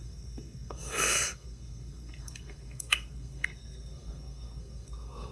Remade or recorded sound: remade